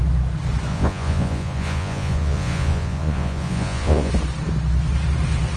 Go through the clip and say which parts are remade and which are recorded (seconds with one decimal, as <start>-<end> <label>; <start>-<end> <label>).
0.0-0.7 recorded; 0.7-4.1 remade; 4.1-5.6 recorded